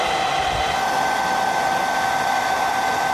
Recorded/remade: recorded